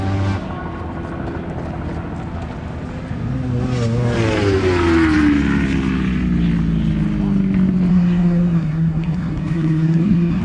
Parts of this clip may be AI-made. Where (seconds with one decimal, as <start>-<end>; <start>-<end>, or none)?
7.9-10.4